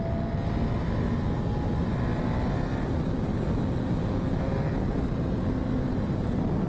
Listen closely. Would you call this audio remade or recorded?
recorded